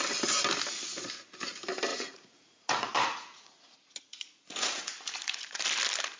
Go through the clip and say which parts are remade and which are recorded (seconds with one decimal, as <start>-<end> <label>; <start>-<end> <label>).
0.0-0.9 recorded; 0.9-1.4 remade; 1.4-1.9 recorded; 1.9-5.6 remade; 5.6-6.2 recorded